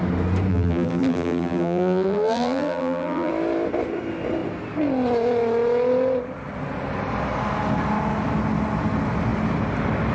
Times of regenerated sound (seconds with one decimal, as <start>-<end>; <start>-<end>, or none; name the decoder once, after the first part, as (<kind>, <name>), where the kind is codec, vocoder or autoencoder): 0.5-3.3 (vocoder, BigVGAN v2)